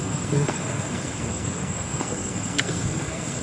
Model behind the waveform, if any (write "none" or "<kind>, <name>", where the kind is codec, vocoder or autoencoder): codec, SNAC